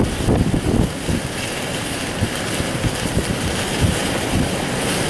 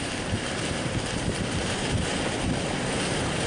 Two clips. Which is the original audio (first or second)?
first